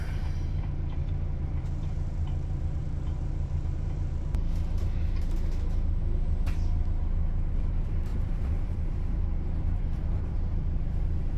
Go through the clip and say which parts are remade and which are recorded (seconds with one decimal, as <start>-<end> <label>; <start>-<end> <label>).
0.0-11.4 remade